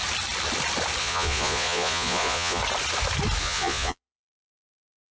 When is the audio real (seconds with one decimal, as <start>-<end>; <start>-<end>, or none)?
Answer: 0.0-1.0; 2.6-3.4